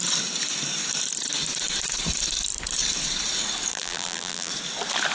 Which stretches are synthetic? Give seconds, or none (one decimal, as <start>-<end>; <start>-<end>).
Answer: 3.7-4.5

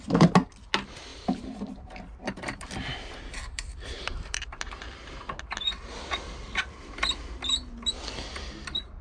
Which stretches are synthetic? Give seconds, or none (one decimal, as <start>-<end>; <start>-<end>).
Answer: 1.1-4.7

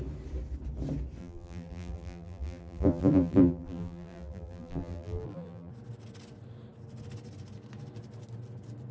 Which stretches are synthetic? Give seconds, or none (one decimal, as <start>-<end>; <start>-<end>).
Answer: 1.2-5.7

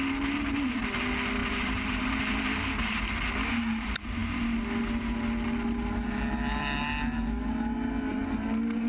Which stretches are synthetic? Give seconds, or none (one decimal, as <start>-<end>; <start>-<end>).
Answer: 1.4-3.1; 8.1-8.9

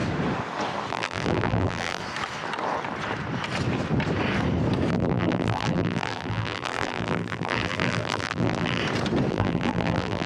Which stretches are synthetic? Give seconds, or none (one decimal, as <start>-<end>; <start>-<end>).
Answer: 0.9-2.0; 4.9-8.8; 9.3-10.3